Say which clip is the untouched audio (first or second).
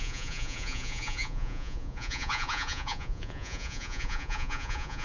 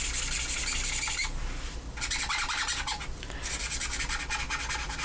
second